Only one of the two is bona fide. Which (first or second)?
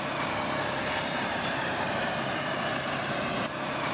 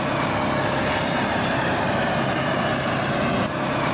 second